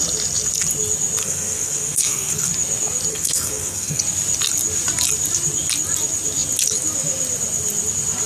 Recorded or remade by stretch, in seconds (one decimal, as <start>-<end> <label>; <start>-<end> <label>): 0.0-1.2 recorded; 1.2-2.5 remade; 2.5-3.1 recorded; 3.1-4.0 remade; 4.0-8.3 recorded